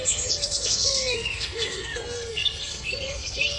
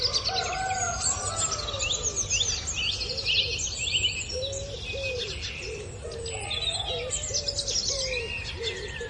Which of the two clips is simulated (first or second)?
first